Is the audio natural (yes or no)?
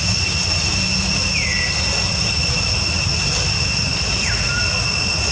yes